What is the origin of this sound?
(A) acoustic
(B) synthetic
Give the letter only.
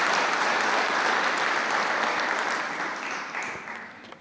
B